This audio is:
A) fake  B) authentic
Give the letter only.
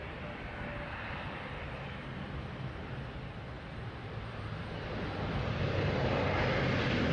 B